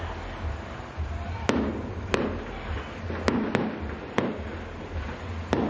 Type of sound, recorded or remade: recorded